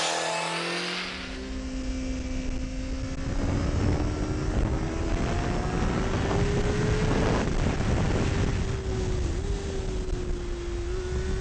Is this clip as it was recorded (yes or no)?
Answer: yes